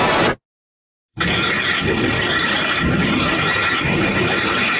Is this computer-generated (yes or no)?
no